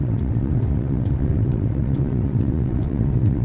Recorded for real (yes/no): no